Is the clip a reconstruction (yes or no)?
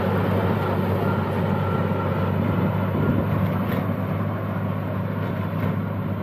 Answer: no